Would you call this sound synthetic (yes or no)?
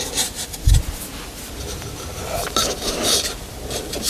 no